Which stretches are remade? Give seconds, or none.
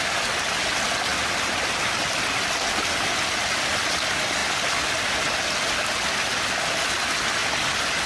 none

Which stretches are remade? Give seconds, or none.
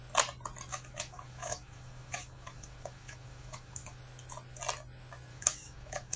0.7-4.0 (autoencoder, DAC-VAE); 5.3-6.2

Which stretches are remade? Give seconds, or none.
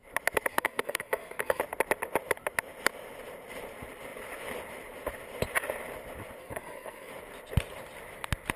0.5-1.6 (codec, SNAC); 6.4-7.1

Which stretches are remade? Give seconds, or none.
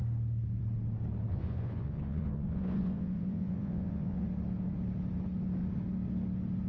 1.3-4.2 (vocoder, Vocos)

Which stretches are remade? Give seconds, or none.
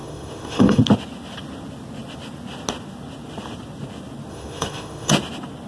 0.0-0.8 (autoencoder, DAC-VAE); 4.3-5.1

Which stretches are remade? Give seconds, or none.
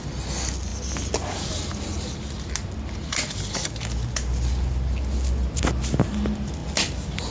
none